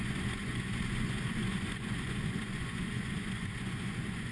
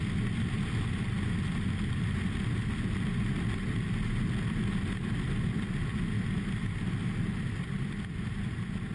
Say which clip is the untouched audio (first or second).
second